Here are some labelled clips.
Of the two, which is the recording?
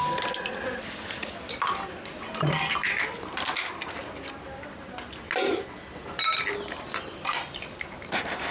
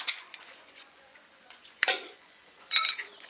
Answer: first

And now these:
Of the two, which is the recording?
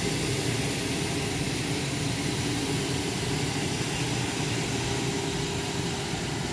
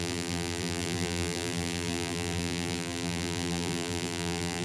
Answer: first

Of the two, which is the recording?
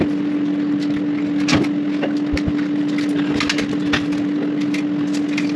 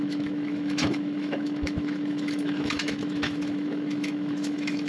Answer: first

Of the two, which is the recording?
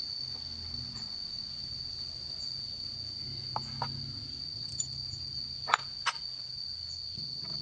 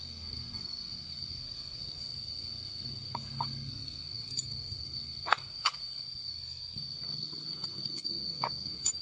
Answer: first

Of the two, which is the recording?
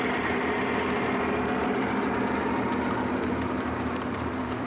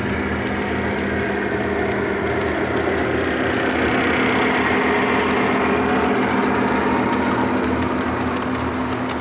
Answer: second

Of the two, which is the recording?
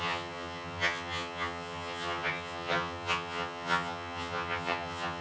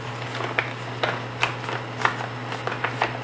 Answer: second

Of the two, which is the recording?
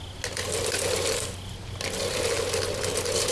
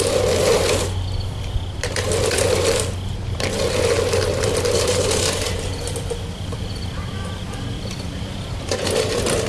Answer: first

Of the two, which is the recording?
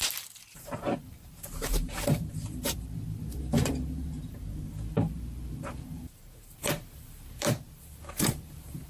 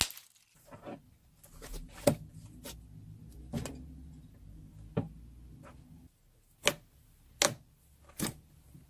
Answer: second